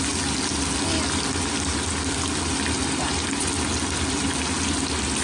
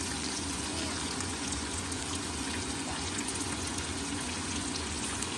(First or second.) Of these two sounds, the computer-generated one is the second